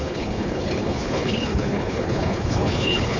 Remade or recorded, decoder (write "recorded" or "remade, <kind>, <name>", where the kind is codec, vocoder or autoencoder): remade, codec, HILCodec